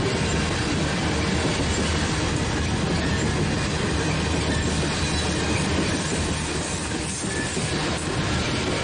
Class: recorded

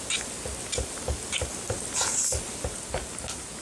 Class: recorded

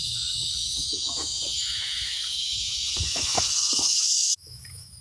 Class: remade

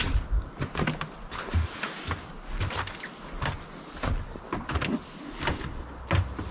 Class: recorded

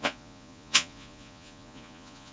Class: remade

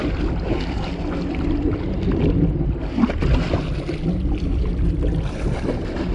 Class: recorded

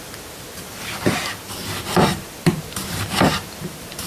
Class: remade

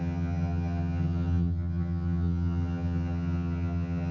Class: remade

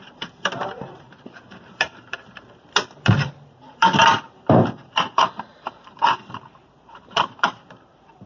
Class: remade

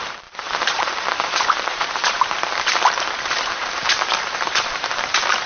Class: remade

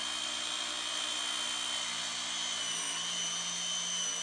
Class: recorded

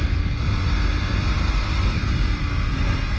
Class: recorded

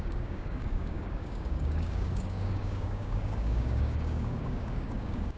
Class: remade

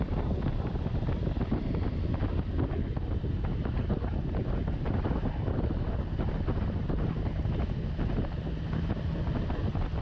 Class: recorded